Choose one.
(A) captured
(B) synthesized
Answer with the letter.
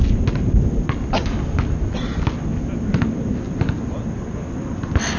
A